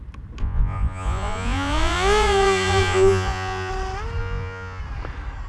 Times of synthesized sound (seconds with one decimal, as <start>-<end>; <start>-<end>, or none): 0.4-3.7; 4.2-4.8